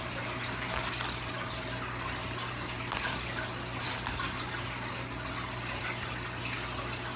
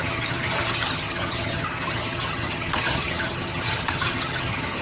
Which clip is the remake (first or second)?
second